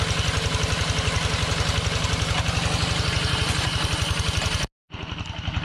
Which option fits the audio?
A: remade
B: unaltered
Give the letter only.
B